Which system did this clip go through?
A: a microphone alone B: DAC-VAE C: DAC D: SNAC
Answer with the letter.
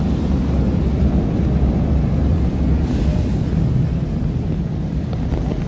A